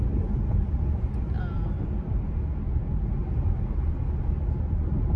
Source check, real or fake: real